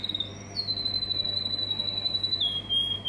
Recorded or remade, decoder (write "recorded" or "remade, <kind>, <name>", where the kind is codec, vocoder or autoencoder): recorded